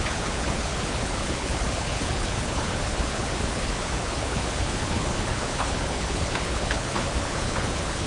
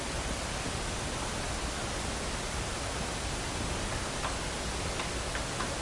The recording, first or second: second